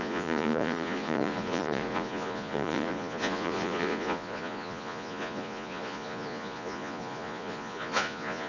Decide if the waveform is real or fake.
fake